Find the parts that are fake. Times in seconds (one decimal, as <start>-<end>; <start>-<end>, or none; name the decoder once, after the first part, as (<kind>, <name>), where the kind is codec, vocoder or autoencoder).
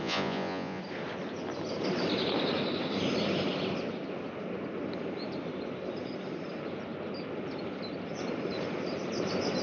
0.0-0.8 (vocoder, Vocos)